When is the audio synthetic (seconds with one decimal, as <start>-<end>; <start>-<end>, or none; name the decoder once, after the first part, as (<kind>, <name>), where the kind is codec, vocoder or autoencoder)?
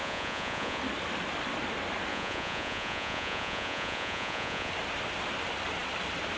0.0-0.8 (vocoder, Vocos); 2.1-4.7